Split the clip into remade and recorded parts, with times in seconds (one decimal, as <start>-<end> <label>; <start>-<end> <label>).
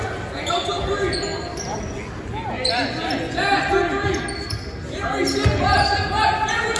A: 0.0-6.8 recorded